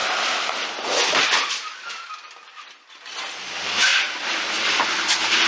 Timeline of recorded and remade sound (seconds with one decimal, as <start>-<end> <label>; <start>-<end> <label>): 0.0-1.2 remade; 1.2-5.5 recorded